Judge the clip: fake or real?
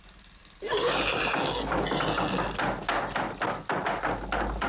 real